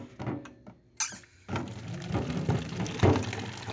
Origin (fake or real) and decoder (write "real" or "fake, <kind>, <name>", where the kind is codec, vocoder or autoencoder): real